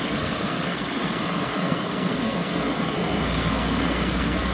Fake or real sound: fake